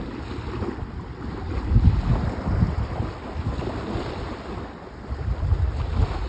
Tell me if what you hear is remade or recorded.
recorded